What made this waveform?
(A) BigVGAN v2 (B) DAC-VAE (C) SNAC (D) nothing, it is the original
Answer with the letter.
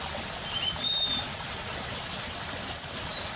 D